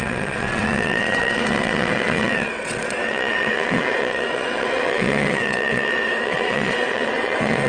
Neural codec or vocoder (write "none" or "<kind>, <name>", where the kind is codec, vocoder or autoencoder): vocoder, WaveNeXt